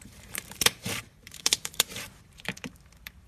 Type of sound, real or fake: fake